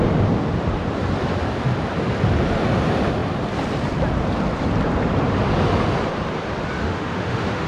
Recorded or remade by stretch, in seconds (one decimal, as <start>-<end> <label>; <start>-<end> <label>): 0.0-6.8 recorded; 6.8-7.7 remade